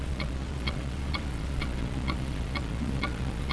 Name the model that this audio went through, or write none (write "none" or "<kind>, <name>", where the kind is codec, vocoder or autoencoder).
vocoder, Vocos